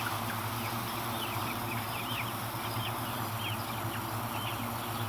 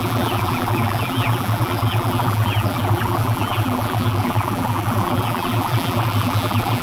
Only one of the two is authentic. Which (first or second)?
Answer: first